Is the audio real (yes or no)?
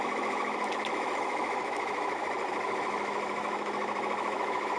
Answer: no